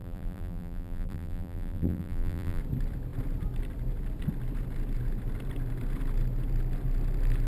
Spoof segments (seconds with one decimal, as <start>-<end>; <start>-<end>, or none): 0.0-2.6